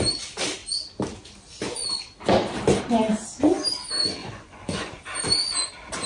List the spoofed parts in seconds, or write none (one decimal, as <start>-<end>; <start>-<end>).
4.2-4.9